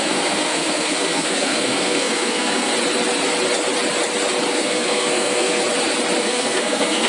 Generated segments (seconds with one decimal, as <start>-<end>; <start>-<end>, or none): 0.0-2.7; 4.5-5.6; 6.2-7.1